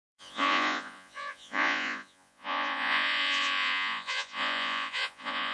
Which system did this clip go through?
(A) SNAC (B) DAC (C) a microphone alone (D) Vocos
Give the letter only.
D